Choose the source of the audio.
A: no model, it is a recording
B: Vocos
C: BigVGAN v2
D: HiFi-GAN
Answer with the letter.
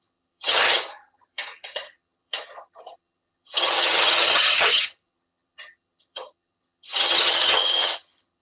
D